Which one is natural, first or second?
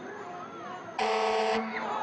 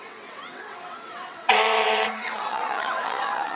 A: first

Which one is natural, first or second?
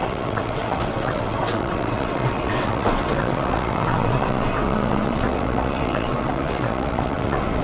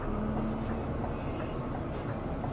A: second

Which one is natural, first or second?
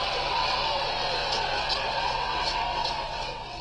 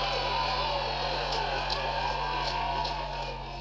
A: second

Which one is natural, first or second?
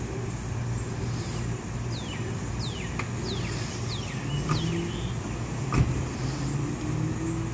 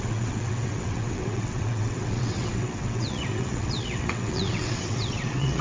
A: first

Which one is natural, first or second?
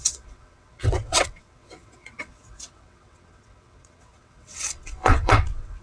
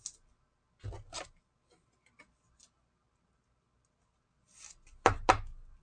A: second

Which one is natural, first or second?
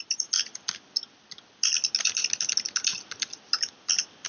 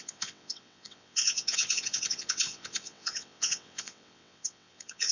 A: first